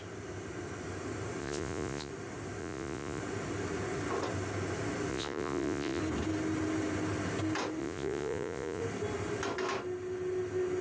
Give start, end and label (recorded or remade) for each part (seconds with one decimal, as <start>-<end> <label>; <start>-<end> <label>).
0.0-1.4 recorded; 1.4-2.1 remade; 2.1-2.6 recorded; 2.6-3.2 remade; 3.2-5.1 recorded; 5.1-6.0 remade; 6.0-7.8 recorded; 7.8-8.8 remade; 8.8-10.8 recorded